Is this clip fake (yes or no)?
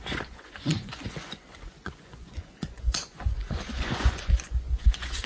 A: yes